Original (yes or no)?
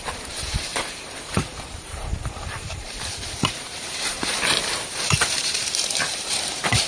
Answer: no